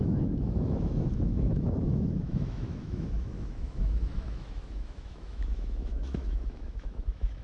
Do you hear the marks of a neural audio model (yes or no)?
yes